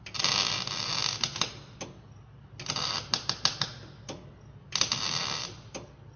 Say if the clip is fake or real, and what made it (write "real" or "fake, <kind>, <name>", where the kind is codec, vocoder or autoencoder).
real